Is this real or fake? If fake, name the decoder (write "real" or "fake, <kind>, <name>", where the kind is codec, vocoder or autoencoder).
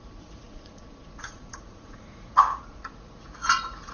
fake, vocoder, Vocos